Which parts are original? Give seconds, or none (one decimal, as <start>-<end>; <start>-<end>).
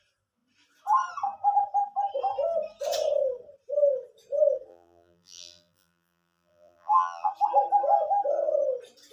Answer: 0.0-4.7; 7.3-9.1